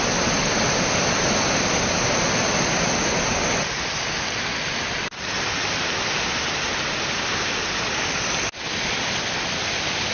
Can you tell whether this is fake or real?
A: real